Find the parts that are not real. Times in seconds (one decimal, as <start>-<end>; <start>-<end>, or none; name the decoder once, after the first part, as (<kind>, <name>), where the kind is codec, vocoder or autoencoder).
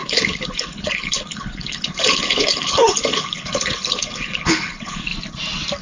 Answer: 0.0-5.1 (codec, HILCodec)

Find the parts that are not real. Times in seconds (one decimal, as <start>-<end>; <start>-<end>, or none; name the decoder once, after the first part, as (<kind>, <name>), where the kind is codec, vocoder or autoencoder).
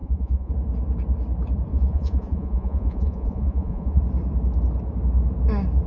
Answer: 0.0-0.5 (vocoder, Vocos); 1.7-4.0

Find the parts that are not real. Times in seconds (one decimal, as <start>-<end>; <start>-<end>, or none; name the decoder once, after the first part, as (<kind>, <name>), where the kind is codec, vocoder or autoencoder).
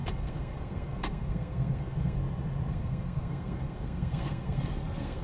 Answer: 0.0-2.2 (codec, SNAC); 2.7-5.2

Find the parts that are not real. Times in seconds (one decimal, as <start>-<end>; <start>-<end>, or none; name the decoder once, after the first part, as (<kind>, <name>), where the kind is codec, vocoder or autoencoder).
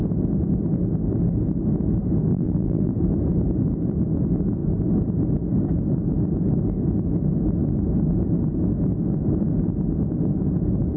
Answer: 2.3-2.9 (vocoder, BigVGAN v2)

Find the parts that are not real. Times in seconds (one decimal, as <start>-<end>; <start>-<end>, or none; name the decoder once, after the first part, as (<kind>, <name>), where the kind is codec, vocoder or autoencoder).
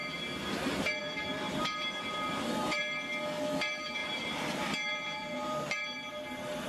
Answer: 1.0-2.8 (vocoder, BigVGAN v2); 4.0-6.1